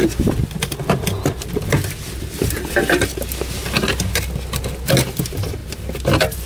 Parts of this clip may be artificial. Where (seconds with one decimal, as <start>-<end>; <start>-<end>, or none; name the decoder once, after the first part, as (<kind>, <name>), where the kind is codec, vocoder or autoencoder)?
none